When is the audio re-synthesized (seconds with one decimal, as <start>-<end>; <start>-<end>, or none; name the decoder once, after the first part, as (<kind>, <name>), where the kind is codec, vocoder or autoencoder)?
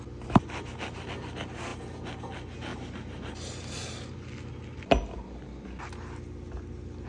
none